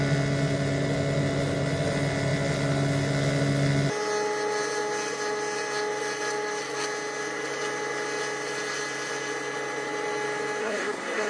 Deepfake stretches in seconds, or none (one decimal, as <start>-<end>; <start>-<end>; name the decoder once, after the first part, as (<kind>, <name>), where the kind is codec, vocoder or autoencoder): 10.6-11.3 (codec, SNAC)